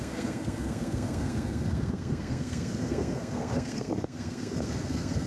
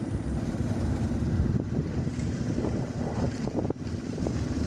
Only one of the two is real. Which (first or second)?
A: second